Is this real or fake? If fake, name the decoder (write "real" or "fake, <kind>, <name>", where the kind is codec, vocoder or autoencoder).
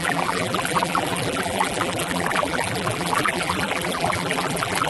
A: fake, vocoder, BigVGAN v2